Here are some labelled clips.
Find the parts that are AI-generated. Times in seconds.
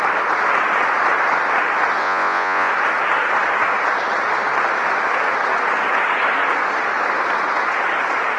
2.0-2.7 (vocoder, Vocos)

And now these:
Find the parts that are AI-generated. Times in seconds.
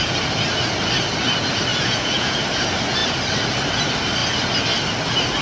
1.7-2.4 (vocoder, Vocos)